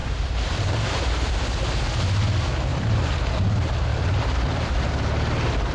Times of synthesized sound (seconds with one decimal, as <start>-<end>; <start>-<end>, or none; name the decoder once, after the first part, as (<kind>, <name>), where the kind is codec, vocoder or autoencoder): 0.0-1.3 (vocoder, BigVGAN v2); 2.7-3.3; 3.9-4.9